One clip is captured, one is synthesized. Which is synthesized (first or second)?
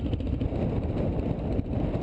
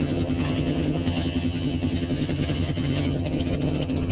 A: second